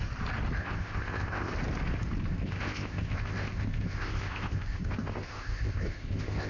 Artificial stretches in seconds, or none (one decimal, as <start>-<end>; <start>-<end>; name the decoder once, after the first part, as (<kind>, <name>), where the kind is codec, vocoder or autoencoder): 0.6-1.5 (codec, ZipCodec); 2.3-6.5